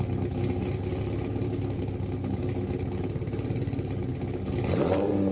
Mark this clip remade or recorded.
recorded